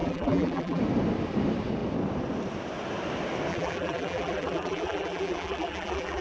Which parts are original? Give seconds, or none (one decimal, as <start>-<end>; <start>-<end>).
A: 0.8-3.5